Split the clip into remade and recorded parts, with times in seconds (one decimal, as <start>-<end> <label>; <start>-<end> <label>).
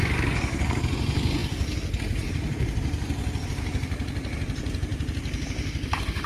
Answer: 0.0-0.8 remade; 0.8-6.3 recorded